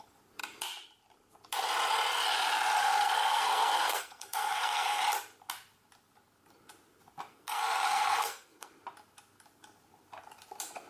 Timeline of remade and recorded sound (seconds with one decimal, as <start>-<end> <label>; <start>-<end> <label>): 0.0-2.8 recorded; 2.8-5.0 remade; 5.0-7.3 recorded; 7.3-8.7 remade; 8.7-10.9 recorded